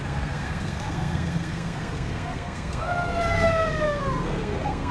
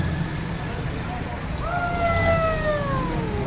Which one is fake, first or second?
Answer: first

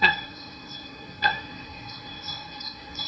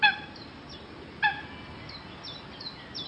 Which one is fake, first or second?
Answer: first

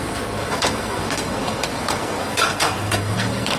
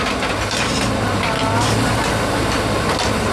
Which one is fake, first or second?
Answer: first